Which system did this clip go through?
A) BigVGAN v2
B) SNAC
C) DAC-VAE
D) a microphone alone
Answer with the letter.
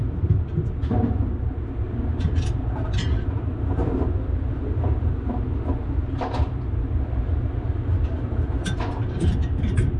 A